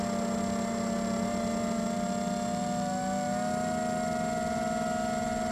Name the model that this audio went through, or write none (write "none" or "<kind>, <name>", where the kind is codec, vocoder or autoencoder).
none